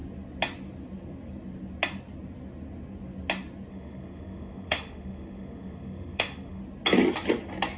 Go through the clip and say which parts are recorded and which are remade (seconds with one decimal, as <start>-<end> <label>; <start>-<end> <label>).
0.0-3.7 recorded; 3.7-6.6 remade; 6.6-7.8 recorded